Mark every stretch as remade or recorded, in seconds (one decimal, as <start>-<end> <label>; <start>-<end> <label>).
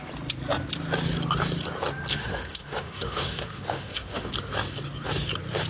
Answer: 0.0-2.1 recorded; 2.1-4.3 remade; 4.3-5.7 recorded